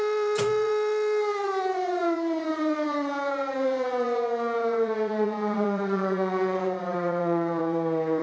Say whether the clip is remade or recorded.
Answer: remade